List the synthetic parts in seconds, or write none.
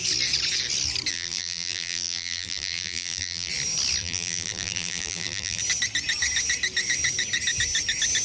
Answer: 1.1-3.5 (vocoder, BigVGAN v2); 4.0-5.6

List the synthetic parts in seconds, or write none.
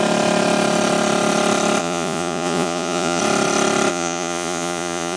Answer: 1.8-3.2 (vocoder, Vocos); 3.9-5.2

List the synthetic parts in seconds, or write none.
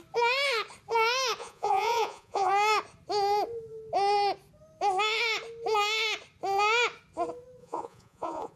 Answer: 1.4-2.5 (vocoder, Vocos); 7.6-8.6